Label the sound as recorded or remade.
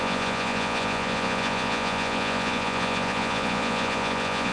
remade